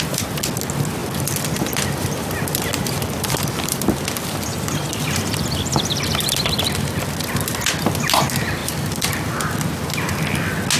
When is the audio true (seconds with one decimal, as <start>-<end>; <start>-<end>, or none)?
0.0-1.0; 6.0-8.6; 9.5-10.8